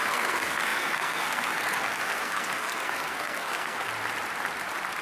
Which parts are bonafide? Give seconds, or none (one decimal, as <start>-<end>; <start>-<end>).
3.9-5.0